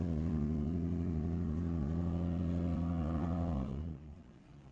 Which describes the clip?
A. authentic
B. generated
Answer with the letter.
B